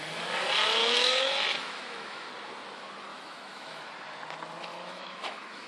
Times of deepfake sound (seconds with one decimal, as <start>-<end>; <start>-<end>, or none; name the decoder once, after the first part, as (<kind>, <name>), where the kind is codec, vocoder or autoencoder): 0.8-2.3 (autoencoder, DAC-VAE); 3.1-3.9; 4.7-5.7